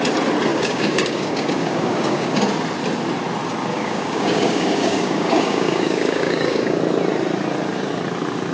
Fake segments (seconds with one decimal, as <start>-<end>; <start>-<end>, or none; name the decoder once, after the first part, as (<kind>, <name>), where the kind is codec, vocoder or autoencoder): 0.5-2.4 (codec, DAC); 3.7-6.8